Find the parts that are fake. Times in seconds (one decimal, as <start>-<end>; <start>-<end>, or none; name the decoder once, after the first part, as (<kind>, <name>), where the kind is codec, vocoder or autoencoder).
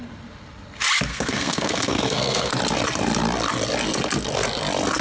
1.1-2.5 (codec, SNAC)